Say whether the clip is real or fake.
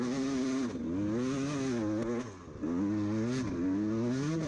real